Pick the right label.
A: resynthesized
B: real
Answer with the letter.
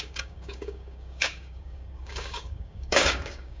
A